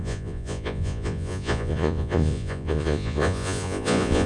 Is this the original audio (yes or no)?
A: no